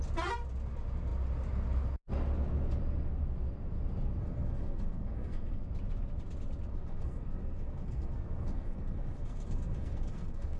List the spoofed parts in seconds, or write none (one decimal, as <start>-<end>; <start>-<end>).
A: 4.2-5.6; 6.7-10.6